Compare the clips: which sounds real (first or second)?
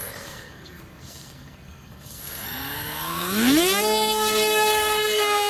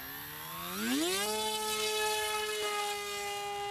second